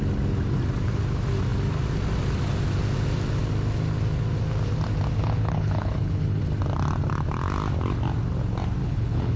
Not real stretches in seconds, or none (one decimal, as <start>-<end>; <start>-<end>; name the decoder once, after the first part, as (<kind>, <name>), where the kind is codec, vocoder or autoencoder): 5.2-6.4 (codec, HILCodec); 8.8-9.4